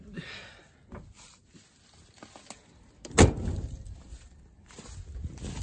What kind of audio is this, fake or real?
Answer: real